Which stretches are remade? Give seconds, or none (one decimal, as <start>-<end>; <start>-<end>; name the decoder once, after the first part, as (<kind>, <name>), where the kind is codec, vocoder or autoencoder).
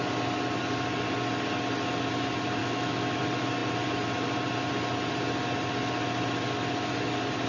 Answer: 2.6-3.2 (autoencoder, DAC-VAE)